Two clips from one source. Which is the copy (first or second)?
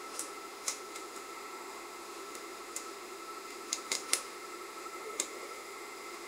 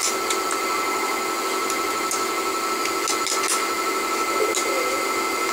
first